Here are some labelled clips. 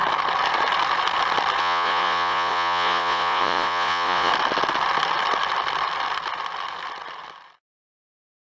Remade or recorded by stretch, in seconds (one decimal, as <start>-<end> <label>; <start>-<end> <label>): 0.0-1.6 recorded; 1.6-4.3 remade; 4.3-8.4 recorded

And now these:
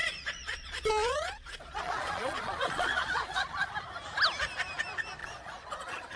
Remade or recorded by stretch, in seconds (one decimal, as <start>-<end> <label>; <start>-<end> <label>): 0.0-3.7 remade; 3.7-5.2 recorded; 5.2-6.2 remade

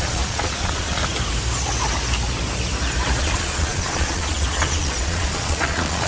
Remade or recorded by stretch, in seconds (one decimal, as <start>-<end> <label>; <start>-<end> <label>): 0.0-1.0 remade; 1.0-3.2 recorded; 3.2-6.1 remade

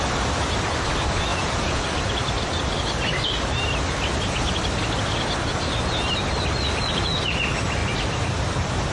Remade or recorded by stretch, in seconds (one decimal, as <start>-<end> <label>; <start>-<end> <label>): 0.0-1.3 recorded; 1.3-1.8 remade; 1.8-8.9 recorded